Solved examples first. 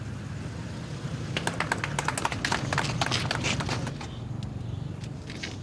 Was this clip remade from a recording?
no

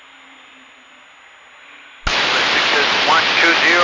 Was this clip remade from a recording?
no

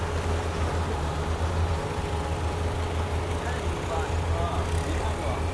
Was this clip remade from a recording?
no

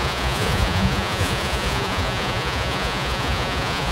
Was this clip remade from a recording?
yes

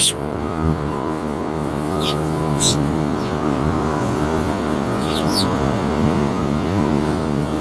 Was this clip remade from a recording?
yes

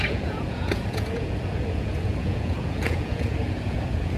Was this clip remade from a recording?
yes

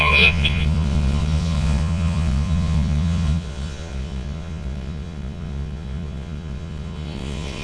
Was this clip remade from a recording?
yes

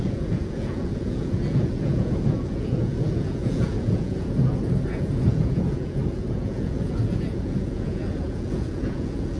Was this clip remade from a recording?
yes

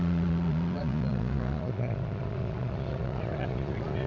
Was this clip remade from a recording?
yes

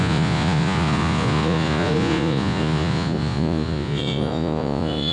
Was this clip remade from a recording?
yes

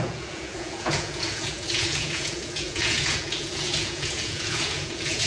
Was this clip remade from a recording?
yes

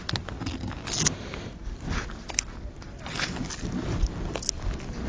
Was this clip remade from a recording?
no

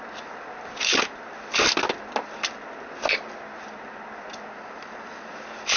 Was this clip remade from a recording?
no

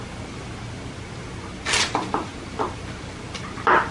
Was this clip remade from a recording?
no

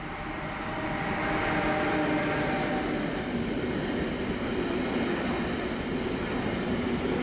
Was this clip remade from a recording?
no